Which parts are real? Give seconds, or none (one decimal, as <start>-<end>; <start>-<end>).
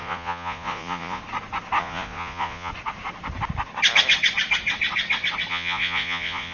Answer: 1.2-1.8; 2.7-5.5